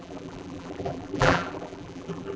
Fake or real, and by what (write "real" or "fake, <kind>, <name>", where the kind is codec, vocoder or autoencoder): fake, vocoder, BigVGAN v2